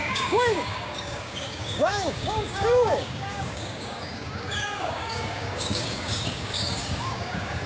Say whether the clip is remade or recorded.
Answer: remade